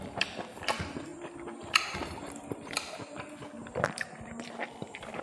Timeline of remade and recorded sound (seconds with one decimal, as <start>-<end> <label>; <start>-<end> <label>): 0.0-5.2 recorded